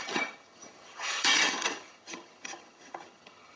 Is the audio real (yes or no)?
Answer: no